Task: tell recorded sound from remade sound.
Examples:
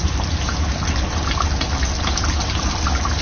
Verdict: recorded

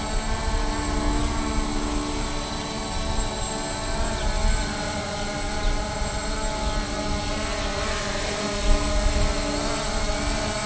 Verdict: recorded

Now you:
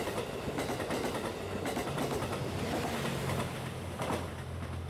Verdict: recorded